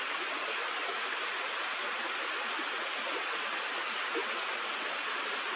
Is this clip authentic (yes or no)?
yes